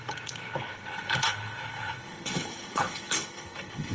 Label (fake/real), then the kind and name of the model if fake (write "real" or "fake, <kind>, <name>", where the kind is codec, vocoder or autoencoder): fake, codec, HILCodec